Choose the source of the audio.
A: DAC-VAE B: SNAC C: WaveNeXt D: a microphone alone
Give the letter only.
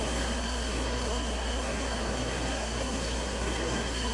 B